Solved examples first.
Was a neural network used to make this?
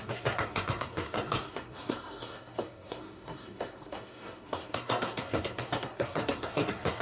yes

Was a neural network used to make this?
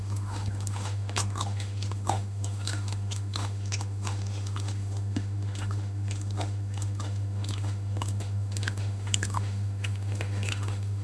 yes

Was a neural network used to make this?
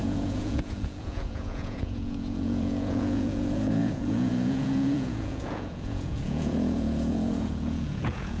yes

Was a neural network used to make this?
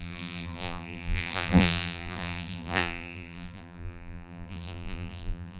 yes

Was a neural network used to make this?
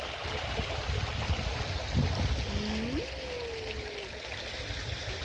no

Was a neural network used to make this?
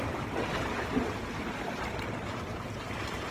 no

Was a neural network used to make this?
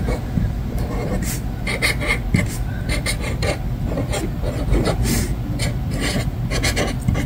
no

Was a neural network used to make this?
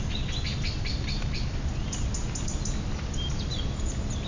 no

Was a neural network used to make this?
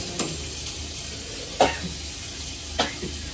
no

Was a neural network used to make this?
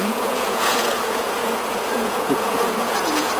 yes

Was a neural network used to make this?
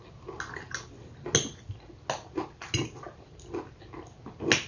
no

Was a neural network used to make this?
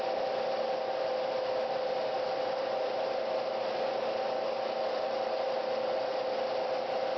no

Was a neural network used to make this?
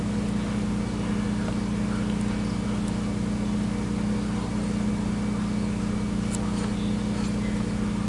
no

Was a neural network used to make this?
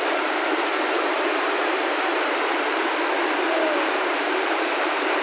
yes